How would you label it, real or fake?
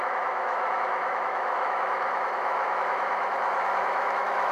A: fake